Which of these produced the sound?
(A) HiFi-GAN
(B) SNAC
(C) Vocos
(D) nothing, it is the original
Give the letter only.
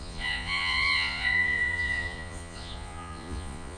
C